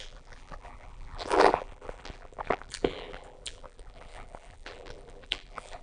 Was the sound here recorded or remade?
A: remade